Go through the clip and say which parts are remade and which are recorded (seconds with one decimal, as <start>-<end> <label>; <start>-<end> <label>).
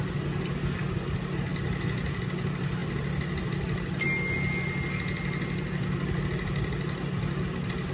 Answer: 0.0-7.9 recorded